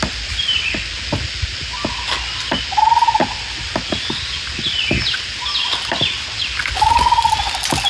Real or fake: real